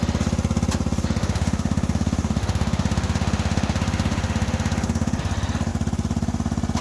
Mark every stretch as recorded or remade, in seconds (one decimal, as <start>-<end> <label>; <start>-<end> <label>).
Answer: 0.0-1.2 recorded; 1.2-5.2 remade; 5.2-6.8 recorded